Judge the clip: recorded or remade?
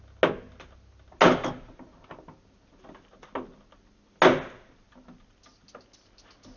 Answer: recorded